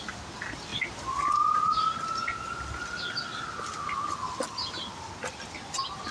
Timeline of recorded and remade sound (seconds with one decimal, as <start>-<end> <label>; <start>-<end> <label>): 0.0-6.1 recorded